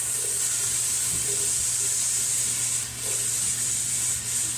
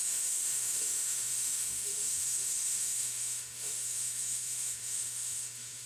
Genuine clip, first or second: first